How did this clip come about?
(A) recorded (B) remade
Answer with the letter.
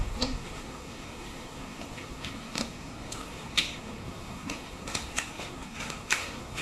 B